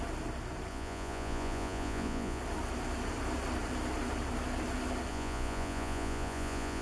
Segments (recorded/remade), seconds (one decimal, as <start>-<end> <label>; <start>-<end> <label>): 0.0-0.7 recorded; 0.7-2.4 remade; 2.4-5.1 recorded; 5.1-6.8 remade